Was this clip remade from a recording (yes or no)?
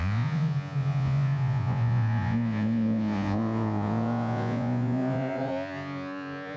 yes